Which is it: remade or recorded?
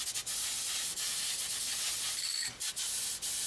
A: recorded